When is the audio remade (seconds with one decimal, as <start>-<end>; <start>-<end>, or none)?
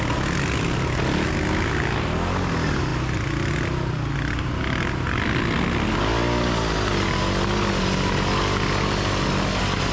none